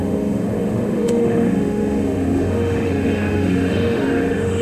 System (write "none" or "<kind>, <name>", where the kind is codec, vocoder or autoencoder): autoencoder, DAC-VAE